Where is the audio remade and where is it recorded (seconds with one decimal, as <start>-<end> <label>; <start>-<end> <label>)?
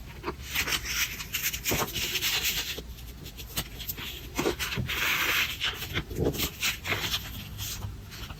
0.0-8.4 recorded